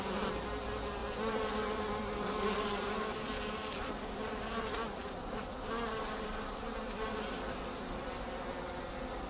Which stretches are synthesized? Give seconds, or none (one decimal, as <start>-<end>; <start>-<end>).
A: none